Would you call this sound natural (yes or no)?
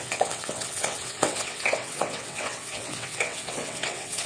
no